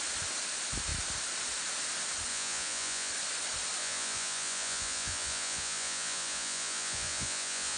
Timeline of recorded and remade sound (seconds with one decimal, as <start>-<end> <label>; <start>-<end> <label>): 0.0-2.3 recorded; 2.3-3.1 remade; 3.1-3.8 recorded; 3.8-7.8 remade